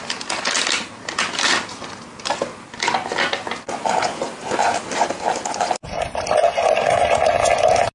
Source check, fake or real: real